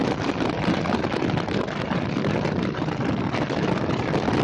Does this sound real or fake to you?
real